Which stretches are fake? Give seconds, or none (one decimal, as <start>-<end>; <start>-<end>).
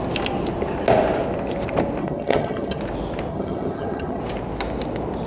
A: 2.0-2.8; 3.3-4.2